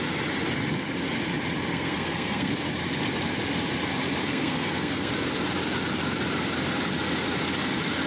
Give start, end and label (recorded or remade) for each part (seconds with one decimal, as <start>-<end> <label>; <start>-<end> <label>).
0.0-1.7 recorded; 1.7-2.5 remade; 2.5-4.2 recorded; 4.2-5.1 remade; 5.1-8.1 recorded